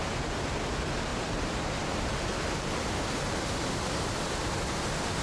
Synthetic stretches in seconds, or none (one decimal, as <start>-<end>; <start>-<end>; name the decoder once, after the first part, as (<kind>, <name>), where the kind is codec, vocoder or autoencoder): 1.1-4.2 (vocoder, BigVGAN v2)